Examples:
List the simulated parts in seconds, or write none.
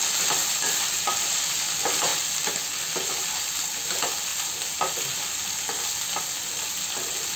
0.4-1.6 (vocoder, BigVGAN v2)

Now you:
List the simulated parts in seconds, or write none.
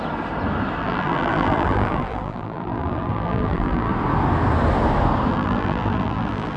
0.8-3.9 (vocoder, BigVGAN v2); 5.3-6.6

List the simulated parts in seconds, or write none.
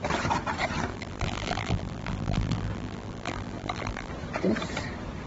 0.9-4.1 (vocoder, BigVGAN v2)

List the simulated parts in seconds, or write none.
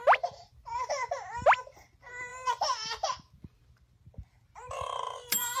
0.0-0.9 (vocoder, BigVGAN v2); 2.3-3.6; 4.6-5.6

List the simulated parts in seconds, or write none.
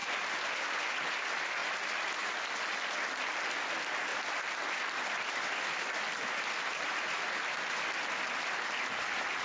0.0-0.8 (vocoder, BigVGAN v2); 1.6-2.3; 4.1-6.9